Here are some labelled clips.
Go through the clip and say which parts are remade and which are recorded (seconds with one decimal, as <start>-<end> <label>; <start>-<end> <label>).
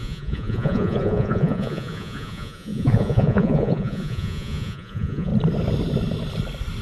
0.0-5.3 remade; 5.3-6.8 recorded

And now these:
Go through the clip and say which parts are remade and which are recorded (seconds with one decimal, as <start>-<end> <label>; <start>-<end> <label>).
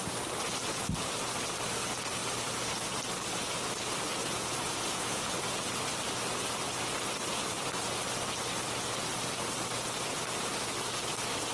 0.0-4.2 recorded; 4.2-5.4 remade; 5.4-11.5 recorded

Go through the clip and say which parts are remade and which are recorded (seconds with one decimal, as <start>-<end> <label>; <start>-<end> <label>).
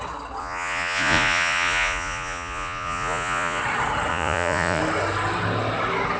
0.0-0.4 recorded; 0.4-3.6 remade; 3.6-4.1 recorded; 4.1-4.8 remade; 4.8-6.2 recorded